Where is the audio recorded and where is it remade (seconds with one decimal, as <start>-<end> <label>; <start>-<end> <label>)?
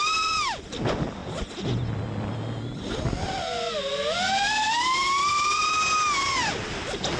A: 0.0-7.2 recorded